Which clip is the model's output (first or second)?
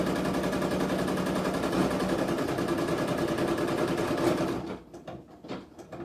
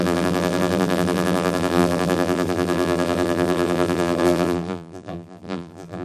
second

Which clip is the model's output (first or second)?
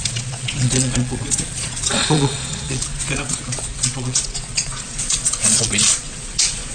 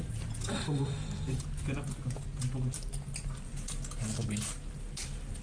first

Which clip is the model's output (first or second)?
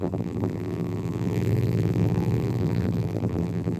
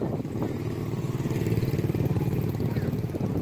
first